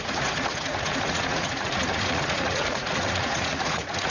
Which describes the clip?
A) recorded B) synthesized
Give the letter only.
B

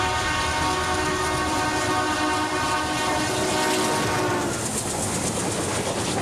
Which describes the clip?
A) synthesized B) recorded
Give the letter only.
B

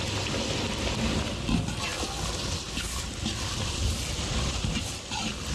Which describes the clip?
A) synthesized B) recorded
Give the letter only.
B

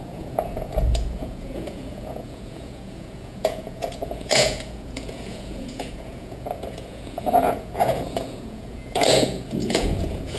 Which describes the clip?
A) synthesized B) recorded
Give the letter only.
A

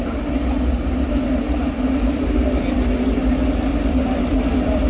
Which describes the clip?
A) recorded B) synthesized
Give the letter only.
A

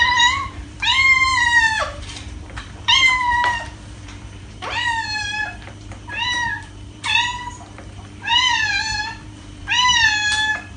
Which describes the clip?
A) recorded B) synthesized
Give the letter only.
B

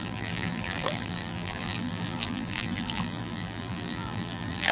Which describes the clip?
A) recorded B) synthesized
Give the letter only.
B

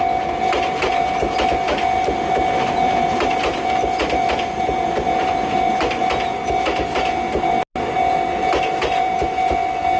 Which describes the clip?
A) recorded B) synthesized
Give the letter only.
A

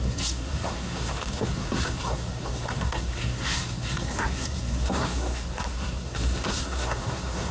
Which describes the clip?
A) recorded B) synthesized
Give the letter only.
B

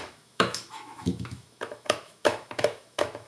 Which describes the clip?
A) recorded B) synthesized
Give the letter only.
B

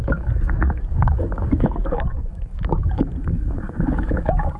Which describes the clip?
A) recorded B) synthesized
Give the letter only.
B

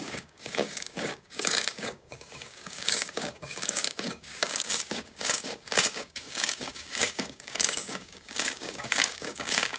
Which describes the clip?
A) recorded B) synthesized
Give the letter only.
B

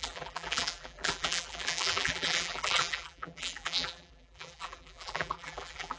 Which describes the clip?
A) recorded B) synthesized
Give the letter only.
B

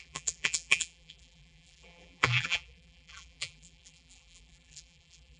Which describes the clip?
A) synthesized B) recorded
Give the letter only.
A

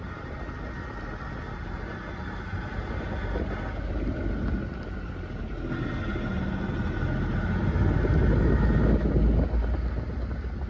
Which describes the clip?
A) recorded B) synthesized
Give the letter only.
A